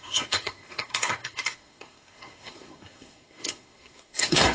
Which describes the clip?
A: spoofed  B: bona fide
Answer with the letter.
A